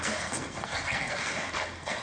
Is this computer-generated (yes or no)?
yes